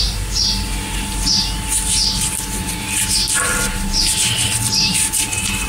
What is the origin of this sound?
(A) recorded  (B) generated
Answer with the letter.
A